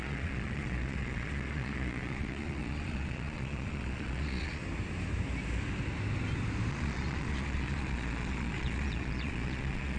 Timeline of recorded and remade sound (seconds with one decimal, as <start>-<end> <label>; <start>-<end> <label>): 0.0-4.6 remade; 4.6-6.7 recorded; 6.7-10.0 remade